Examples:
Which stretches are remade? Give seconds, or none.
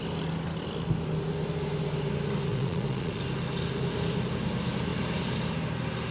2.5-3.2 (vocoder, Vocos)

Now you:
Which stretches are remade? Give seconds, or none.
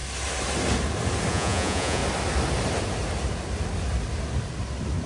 1.3-2.0 (vocoder, Vocos)